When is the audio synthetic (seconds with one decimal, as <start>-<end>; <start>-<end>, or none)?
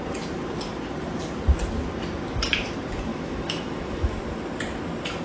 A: 3.1-4.2